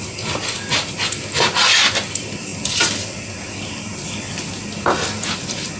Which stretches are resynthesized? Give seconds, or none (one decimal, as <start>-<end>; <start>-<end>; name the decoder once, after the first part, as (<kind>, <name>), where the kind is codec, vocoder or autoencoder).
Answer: 0.0-0.4 (vocoder, BigVGAN v2); 2.1-2.5; 3.4-3.9; 4.8-5.8